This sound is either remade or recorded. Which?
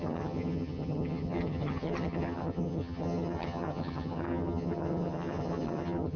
remade